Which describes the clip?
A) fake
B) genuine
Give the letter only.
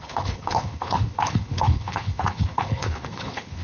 A